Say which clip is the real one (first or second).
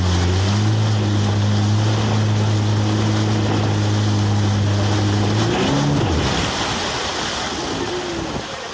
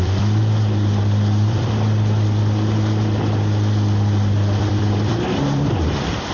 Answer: first